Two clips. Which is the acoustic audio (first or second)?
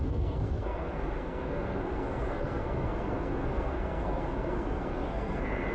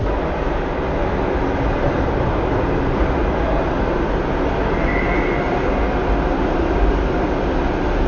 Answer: second